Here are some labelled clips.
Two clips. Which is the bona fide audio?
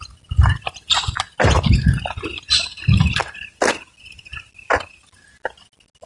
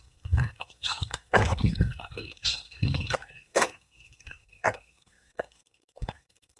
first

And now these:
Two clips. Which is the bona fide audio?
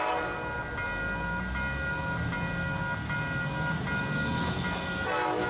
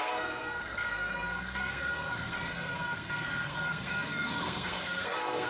first